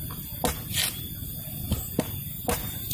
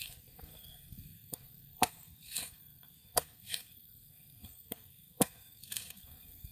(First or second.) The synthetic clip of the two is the second